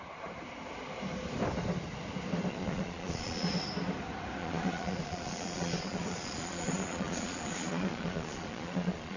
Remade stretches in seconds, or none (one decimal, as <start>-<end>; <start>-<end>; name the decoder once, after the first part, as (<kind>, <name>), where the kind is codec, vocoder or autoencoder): 2.5-3.5 (vocoder, Vocos); 4.4-9.2